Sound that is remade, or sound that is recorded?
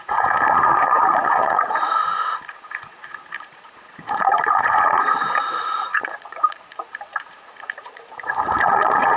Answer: remade